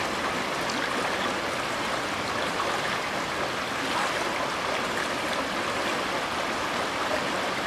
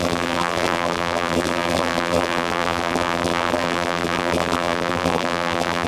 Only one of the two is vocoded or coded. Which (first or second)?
second